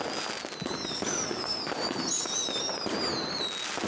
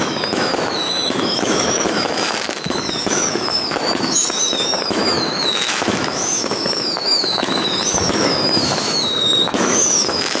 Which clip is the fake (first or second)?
second